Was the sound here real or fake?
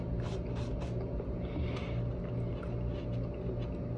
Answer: real